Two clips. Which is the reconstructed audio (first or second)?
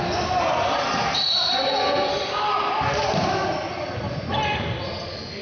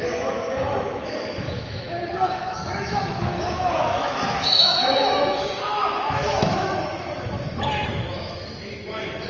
second